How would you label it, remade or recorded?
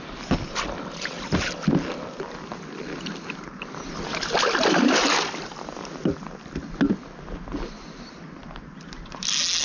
recorded